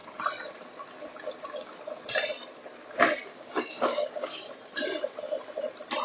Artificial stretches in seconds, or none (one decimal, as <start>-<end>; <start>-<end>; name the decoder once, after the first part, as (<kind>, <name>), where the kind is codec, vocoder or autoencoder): 3.3-4.5 (codec, DAC)